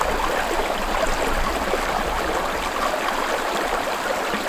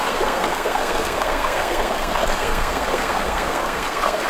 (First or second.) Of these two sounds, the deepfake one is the second